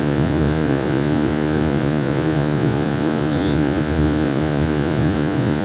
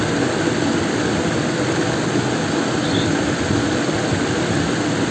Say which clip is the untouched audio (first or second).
second